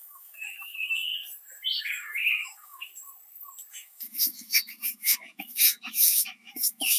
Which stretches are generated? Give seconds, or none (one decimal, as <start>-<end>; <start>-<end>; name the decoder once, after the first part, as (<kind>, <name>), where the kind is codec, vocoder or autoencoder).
0.0-1.1 (autoencoder, DAC-VAE); 1.8-2.9; 3.7-7.0